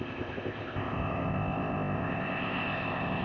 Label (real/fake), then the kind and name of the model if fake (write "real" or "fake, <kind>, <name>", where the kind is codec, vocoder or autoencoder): fake, codec, ZipCodec